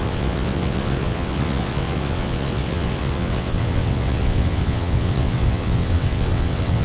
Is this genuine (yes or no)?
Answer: no